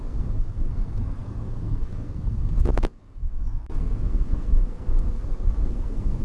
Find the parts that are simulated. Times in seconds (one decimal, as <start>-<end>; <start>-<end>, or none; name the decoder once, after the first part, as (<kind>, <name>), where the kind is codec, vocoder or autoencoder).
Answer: 0.0-6.2 (codec, SNAC)